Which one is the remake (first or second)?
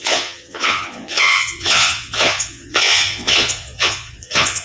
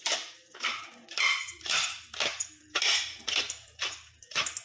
first